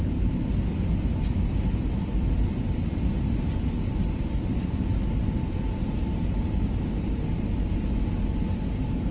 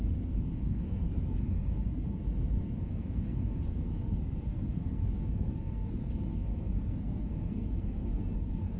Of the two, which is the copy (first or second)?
second